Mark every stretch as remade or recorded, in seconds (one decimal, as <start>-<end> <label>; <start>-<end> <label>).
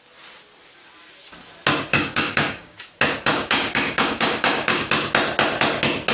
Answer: 0.0-1.9 recorded; 1.9-2.8 remade; 2.8-3.3 recorded; 3.3-4.9 remade; 4.9-6.1 recorded